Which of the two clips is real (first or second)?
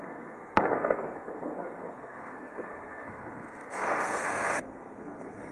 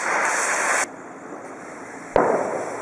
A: second